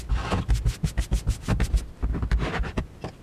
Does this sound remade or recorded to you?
remade